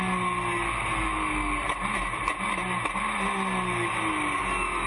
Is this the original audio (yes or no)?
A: yes